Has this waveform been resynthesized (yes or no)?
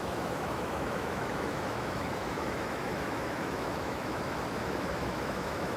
yes